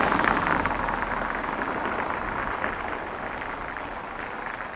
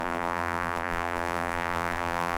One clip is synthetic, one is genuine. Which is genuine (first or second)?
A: first